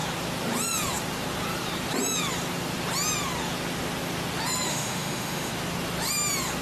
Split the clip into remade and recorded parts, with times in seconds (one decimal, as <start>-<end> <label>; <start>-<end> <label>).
0.0-4.7 recorded; 4.7-5.5 remade; 5.5-6.6 recorded